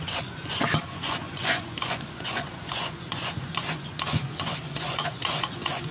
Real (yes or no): no